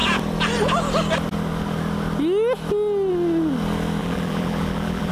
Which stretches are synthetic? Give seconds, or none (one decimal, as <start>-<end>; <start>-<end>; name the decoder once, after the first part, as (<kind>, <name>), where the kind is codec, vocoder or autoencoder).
4.0-5.1 (vocoder, BigVGAN v2)